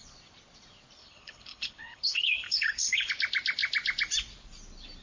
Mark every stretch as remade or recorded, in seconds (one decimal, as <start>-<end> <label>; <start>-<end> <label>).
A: 0.0-1.0 recorded; 1.0-3.1 remade; 3.1-5.0 recorded